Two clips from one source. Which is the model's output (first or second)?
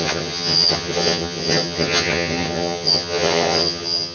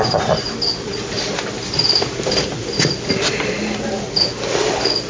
first